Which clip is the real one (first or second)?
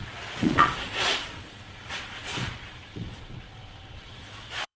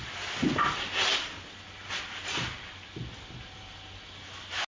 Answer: second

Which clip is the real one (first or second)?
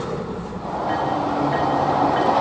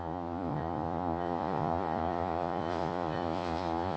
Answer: first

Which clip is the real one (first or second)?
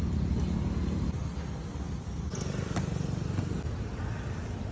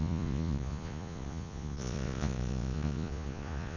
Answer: first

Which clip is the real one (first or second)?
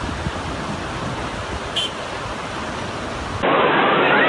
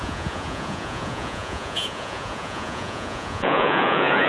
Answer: first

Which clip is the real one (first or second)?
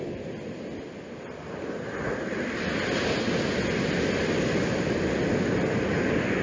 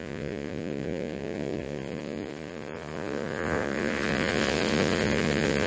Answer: first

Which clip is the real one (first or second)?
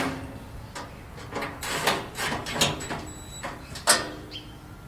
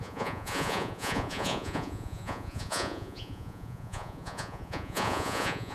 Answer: first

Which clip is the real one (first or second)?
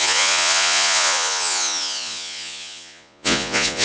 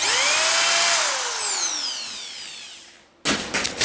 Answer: second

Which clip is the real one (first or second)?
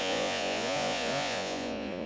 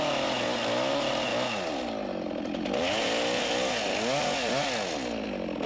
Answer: second